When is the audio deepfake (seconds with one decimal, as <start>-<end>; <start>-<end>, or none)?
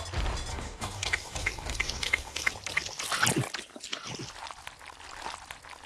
0.5-2.5